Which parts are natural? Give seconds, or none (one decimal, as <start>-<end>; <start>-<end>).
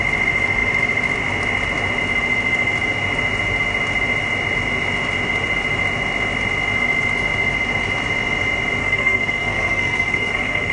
0.0-8.8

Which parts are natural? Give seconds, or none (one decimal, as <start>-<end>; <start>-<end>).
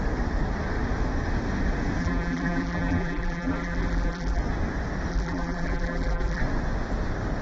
0.0-2.0; 4.4-5.1; 6.4-7.4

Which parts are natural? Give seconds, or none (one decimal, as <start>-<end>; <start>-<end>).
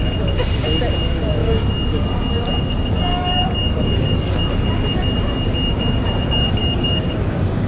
0.0-3.1; 4.5-6.6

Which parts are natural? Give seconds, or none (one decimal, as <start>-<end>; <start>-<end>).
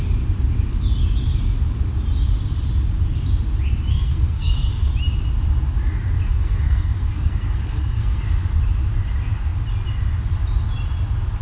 0.0-3.9; 4.9-6.3; 8.2-11.4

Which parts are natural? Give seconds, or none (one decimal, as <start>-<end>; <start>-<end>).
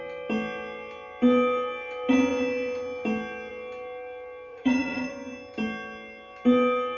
0.0-4.5; 5.1-7.0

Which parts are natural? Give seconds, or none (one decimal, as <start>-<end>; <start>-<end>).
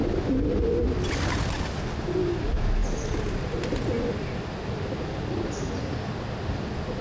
0.0-2.8; 3.4-7.0